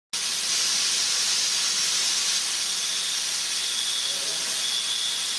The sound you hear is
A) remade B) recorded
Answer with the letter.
B